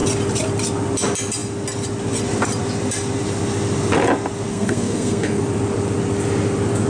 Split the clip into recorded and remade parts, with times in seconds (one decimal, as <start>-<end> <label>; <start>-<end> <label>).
0.0-4.5 recorded; 4.5-5.4 remade; 5.4-6.9 recorded